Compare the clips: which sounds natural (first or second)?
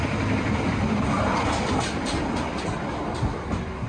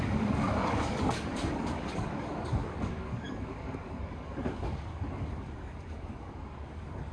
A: first